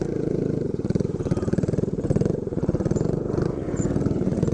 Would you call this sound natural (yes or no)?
no